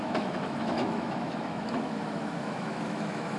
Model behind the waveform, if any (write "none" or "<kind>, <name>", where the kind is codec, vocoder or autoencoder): autoencoder, DAC-VAE